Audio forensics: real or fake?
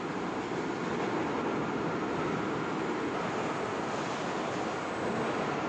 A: real